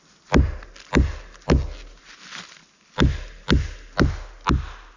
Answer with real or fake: real